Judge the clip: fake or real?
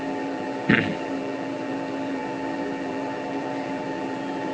fake